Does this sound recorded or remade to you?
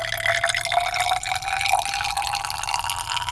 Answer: recorded